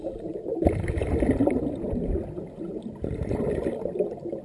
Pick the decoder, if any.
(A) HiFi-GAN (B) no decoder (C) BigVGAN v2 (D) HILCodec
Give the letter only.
C